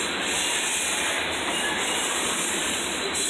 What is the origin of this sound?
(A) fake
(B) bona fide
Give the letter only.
A